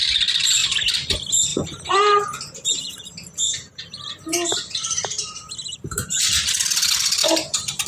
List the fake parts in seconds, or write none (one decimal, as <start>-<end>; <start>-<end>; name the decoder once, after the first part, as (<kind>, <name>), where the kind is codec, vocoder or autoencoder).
1.5-6.2 (vocoder, BigVGAN v2); 7.2-7.9